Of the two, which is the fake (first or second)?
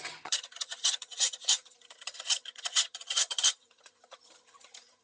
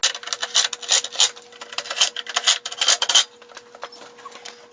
first